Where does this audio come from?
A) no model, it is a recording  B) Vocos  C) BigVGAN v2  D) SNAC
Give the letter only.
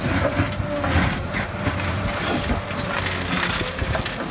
A